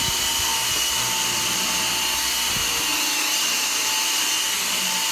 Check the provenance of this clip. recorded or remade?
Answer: recorded